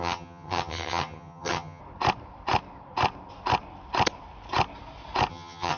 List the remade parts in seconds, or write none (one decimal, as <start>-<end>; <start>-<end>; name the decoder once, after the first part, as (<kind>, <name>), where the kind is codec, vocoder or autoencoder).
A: 0.0-1.8 (vocoder, HiFi-GAN); 5.3-5.8